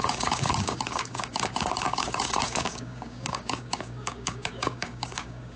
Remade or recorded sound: remade